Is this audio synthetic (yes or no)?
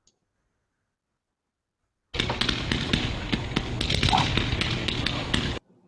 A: no